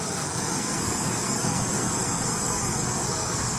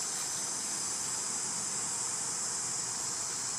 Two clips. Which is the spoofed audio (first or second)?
first